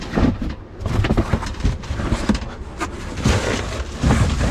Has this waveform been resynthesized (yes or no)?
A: no